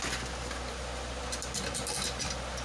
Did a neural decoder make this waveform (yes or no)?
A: no